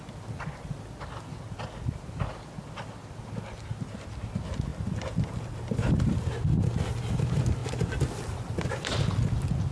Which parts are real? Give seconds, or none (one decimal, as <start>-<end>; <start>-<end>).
0.0-4.7; 6.1-7.6; 9.2-9.7